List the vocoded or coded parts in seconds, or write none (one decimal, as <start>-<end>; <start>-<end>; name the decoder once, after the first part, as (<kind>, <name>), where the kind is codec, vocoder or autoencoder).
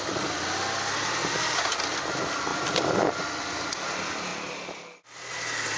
none